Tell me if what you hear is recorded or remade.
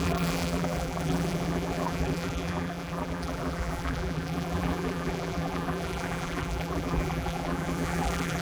remade